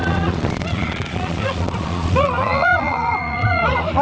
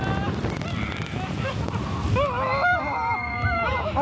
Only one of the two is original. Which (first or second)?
second